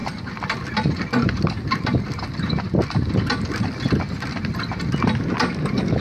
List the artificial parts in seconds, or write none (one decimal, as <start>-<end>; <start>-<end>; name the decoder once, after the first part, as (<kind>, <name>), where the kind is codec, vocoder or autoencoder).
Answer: none

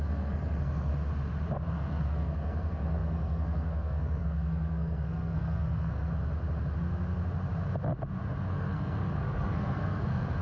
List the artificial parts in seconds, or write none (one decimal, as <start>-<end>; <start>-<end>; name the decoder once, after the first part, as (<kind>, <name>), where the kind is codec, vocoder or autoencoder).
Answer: 0.0-0.9 (codec, SNAC); 1.7-6.1; 8.5-10.4

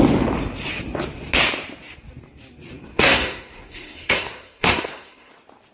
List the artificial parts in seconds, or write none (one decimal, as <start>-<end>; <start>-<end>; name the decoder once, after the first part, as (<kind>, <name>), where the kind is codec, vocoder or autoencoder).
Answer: 2.9-5.3 (codec, SNAC)

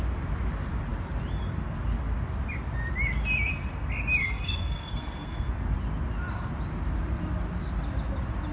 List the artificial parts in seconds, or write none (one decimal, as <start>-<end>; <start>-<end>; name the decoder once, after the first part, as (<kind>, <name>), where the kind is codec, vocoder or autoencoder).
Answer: 4.2-5.5 (codec, SNAC)